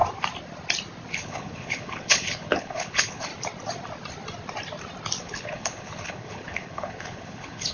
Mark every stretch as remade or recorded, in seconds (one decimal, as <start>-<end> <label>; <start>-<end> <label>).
0.0-1.1 recorded; 1.1-3.3 remade; 3.3-5.2 recorded; 5.2-7.7 remade